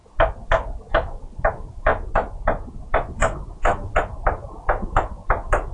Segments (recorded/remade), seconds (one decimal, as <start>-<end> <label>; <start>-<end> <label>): 0.0-5.7 recorded

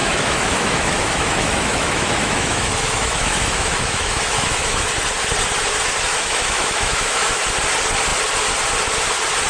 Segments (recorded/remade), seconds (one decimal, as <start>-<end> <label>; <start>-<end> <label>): 0.0-4.9 remade; 4.9-6.1 recorded; 6.1-7.4 remade; 7.4-9.5 recorded

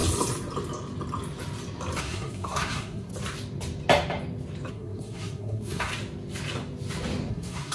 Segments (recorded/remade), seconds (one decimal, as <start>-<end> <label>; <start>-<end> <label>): 0.0-2.0 recorded; 2.0-3.1 remade; 3.1-4.7 recorded; 4.7-5.9 remade; 5.9-7.3 recorded; 7.3-7.7 remade

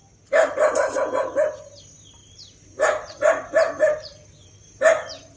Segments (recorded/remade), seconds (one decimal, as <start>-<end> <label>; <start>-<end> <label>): 0.0-2.2 recorded; 2.2-5.4 remade

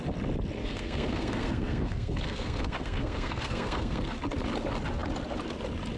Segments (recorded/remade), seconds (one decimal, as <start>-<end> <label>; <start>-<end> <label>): 0.0-0.6 recorded; 0.6-4.2 remade; 4.2-6.0 recorded

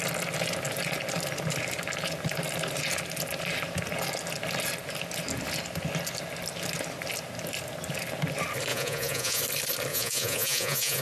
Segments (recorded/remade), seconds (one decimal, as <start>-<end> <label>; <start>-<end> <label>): 0.0-8.7 recorded; 8.7-9.4 remade; 9.4-9.9 recorded; 9.9-11.0 remade